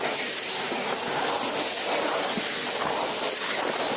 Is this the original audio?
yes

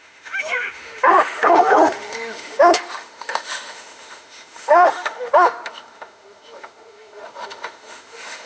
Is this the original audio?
no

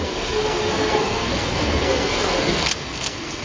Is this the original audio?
no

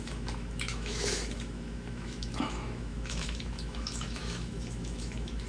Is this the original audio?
no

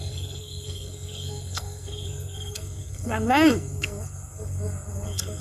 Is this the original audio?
no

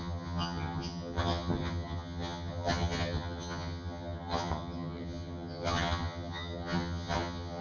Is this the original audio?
no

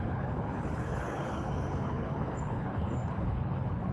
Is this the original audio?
no